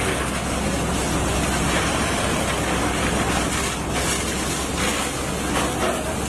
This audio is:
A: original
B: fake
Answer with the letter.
A